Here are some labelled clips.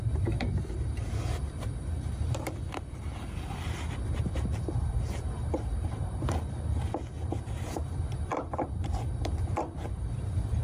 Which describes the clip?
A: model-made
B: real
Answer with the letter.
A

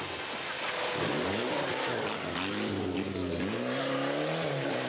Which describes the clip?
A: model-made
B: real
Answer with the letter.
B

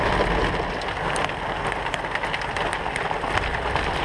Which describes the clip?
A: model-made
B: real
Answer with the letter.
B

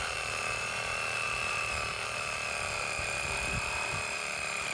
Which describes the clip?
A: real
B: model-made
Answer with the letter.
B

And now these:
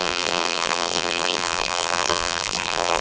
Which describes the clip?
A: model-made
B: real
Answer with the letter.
A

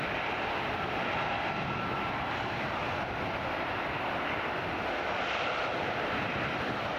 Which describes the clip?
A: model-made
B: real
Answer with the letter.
B